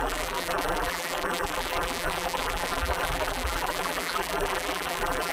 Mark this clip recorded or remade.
remade